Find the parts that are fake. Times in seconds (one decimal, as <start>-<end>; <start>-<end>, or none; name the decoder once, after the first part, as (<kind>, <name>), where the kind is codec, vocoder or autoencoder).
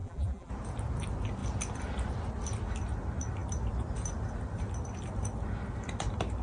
0.0-0.5 (vocoder, BigVGAN v2)